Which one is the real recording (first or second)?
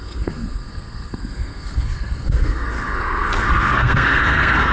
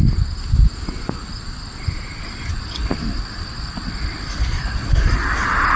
second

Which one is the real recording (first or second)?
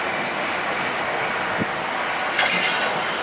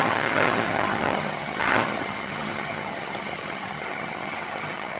first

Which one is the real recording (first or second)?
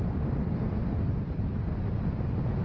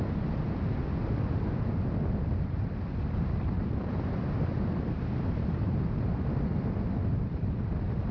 first